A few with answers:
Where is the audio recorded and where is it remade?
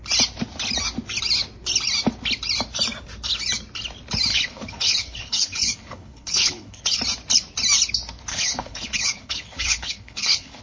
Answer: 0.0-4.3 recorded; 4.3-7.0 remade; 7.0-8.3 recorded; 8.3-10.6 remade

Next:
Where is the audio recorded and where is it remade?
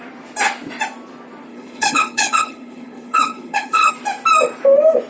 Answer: 0.0-1.5 recorded; 1.5-3.9 remade; 3.9-5.1 recorded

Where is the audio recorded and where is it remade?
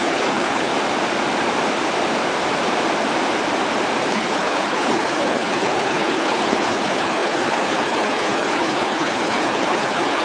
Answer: 0.0-0.7 remade; 0.7-4.1 recorded; 4.1-10.2 remade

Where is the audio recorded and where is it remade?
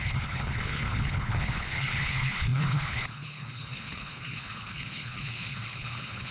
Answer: 0.0-6.3 remade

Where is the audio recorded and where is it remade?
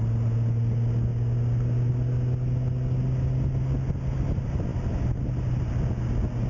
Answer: 0.0-6.5 recorded